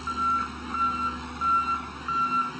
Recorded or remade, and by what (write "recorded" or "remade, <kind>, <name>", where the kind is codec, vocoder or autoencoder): recorded